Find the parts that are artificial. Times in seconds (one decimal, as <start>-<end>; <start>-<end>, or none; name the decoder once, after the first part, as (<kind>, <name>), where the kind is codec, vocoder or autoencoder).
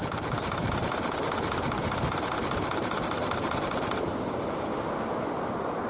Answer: 0.0-4.7 (vocoder, BigVGAN v2)